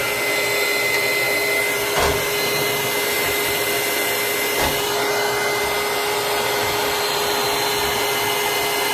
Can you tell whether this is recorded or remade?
recorded